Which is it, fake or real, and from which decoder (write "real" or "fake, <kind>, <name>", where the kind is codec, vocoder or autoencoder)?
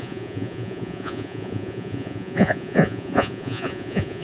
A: fake, vocoder, Vocos